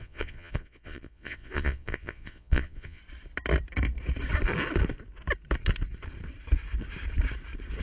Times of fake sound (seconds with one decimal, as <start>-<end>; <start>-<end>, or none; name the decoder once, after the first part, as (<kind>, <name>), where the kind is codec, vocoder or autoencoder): 0.0-3.0 (vocoder, Vocos)